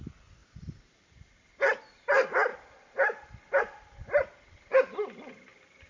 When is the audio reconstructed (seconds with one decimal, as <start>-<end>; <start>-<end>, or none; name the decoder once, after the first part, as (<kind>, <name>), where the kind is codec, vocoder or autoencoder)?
none

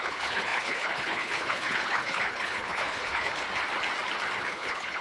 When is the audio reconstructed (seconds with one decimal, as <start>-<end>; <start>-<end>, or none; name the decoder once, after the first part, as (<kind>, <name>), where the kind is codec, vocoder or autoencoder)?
0.0-3.4 (codec, HILCodec); 4.4-5.0